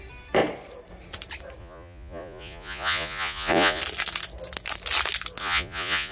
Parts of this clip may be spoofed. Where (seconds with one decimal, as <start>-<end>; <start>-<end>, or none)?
1.6-3.8; 5.4-6.1